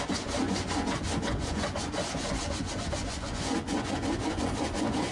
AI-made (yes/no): yes